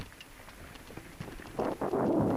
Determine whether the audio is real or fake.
real